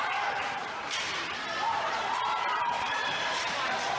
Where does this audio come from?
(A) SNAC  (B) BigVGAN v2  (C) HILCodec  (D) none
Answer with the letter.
B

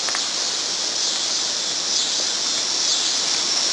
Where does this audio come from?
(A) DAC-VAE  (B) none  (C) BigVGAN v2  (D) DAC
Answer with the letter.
B